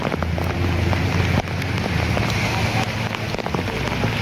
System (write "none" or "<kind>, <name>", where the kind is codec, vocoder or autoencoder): none